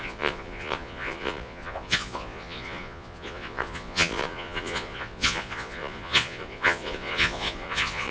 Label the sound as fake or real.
fake